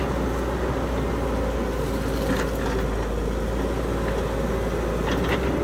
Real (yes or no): yes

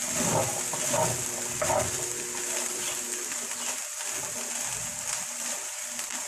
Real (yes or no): yes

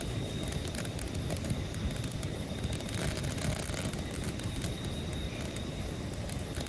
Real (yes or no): no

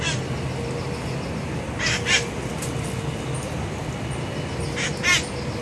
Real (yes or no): yes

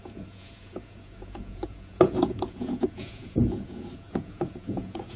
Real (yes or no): no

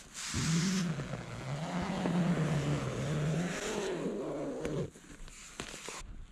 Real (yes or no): yes